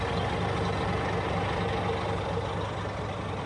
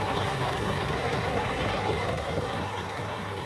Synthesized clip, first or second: second